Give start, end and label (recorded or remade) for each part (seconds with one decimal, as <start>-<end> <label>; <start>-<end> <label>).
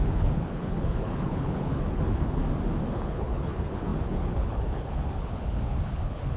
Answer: 0.0-2.4 remade; 2.4-2.9 recorded; 2.9-6.4 remade